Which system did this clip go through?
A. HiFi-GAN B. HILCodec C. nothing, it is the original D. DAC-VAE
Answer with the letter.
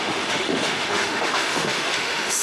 D